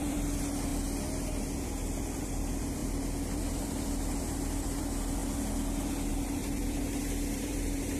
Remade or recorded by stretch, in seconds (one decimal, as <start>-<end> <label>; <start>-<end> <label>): 0.0-0.7 remade; 0.7-2.2 recorded; 2.2-5.2 remade; 5.2-6.1 recorded; 6.1-8.0 remade